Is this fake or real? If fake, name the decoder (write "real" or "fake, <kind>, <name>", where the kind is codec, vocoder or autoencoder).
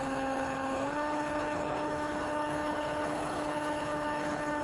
fake, codec, HILCodec